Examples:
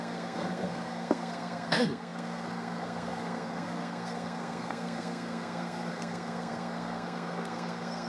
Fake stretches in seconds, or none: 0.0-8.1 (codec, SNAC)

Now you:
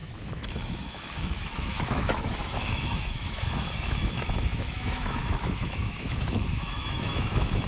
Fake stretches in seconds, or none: 0.0-7.7 (autoencoder, DAC-VAE)

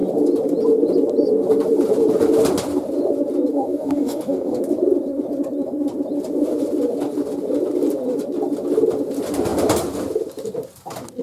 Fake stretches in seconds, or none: 3.5-4.6 (codec, DAC)

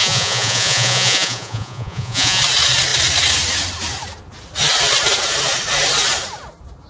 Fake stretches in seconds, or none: 0.0-2.4 (vocoder, Vocos)

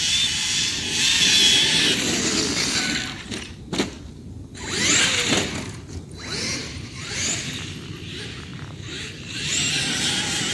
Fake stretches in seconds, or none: 6.6-7.4 (vocoder, BigVGAN v2); 8.5-9.5

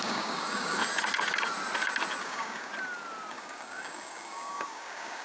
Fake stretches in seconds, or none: 0.0-0.8 (codec, DAC); 2.2-2.7; 3.3-5.2